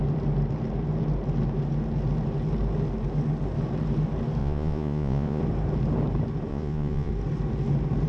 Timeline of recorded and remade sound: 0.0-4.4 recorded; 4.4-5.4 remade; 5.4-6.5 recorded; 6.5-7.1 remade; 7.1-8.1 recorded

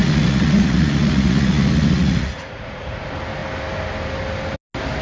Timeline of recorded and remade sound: 0.0-3.0 remade; 3.0-5.0 recorded

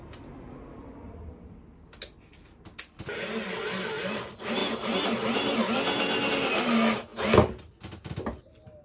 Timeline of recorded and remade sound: 0.0-8.8 recorded

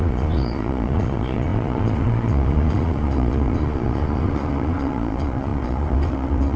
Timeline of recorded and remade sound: 0.0-6.6 remade

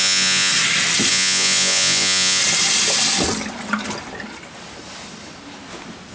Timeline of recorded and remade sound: 0.0-0.5 remade; 0.5-1.1 recorded; 1.1-2.4 remade; 2.4-6.1 recorded

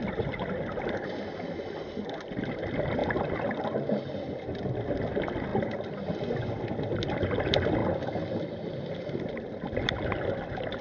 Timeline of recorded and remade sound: 0.0-10.8 recorded